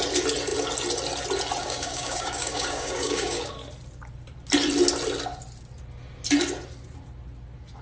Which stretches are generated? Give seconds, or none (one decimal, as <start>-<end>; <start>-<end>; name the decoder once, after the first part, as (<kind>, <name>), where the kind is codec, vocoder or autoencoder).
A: 1.6-3.5 (codec, DAC)

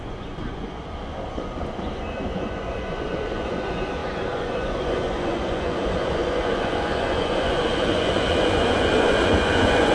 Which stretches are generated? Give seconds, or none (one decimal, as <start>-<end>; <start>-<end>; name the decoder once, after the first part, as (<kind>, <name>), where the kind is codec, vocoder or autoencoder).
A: 0.0-9.9 (vocoder, Vocos)

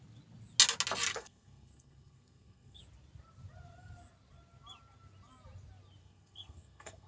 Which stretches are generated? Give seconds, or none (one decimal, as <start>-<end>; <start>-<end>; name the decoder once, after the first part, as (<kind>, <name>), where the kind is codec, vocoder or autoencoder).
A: 1.1-2.8 (codec, SNAC); 6.0-7.1

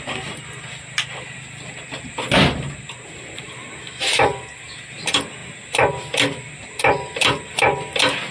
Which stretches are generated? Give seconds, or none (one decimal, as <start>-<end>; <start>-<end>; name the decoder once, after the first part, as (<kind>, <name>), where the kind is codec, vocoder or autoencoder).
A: none

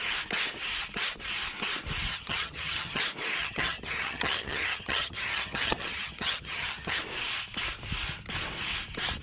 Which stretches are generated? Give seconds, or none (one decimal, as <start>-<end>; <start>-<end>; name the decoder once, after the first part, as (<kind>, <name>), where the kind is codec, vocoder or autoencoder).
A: 2.1-3.0 (vocoder, HiFi-GAN); 3.4-7.0

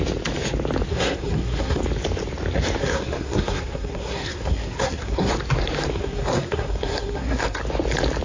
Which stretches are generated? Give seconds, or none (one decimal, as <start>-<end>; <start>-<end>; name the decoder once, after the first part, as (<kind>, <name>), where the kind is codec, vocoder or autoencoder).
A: 0.9-1.8 (codec, SNAC); 2.8-5.3; 5.9-7.6